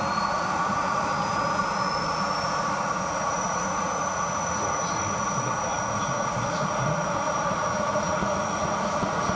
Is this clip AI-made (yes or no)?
yes